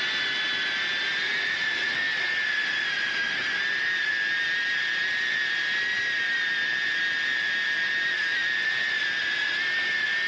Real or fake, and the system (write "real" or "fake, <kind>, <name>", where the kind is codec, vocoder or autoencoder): real